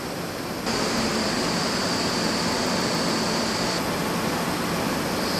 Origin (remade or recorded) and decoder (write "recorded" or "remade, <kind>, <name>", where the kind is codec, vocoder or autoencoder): recorded